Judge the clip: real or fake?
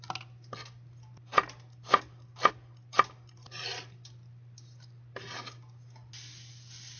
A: real